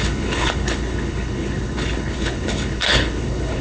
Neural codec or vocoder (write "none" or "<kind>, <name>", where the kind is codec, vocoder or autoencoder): codec, HILCodec